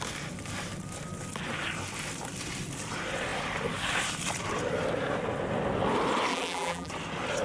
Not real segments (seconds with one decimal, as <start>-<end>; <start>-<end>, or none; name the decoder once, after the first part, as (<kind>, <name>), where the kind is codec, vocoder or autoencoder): 6.3-6.9 (vocoder, BigVGAN v2)